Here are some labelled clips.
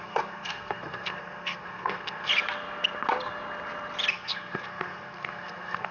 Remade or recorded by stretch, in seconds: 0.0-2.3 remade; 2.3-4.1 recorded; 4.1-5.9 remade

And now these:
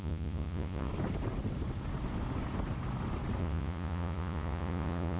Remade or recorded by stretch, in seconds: 0.0-0.9 remade; 0.9-3.4 recorded; 3.4-5.2 remade

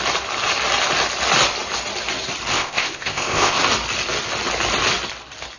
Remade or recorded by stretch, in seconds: 0.0-2.5 recorded; 2.5-3.6 remade; 3.6-5.6 recorded